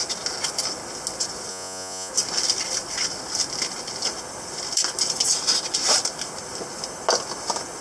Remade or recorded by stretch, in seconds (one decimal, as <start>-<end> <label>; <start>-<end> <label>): 0.0-1.5 recorded; 1.5-2.1 remade; 2.1-7.8 recorded